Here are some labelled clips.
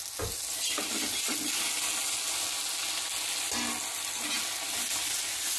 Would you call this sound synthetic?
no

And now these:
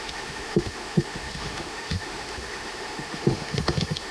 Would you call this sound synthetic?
yes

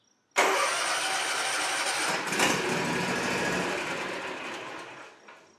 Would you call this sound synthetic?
no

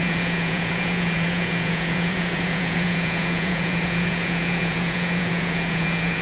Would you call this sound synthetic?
yes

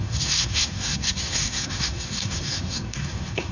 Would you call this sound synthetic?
yes